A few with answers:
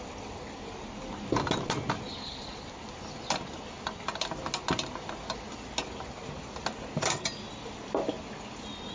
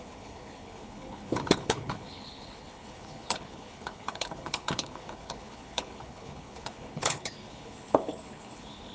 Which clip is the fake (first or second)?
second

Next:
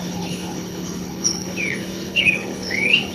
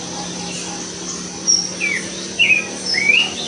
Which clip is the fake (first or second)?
first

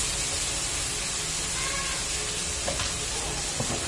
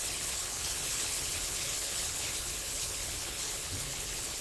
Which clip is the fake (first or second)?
second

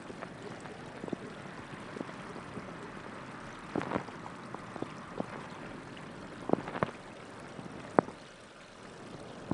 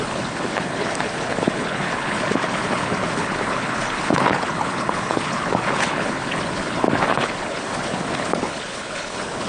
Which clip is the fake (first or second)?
second